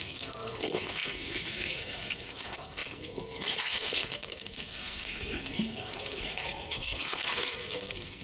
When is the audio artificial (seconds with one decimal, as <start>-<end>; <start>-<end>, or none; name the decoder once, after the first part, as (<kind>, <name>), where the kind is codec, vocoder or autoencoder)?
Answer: 0.0-8.2 (codec, SNAC)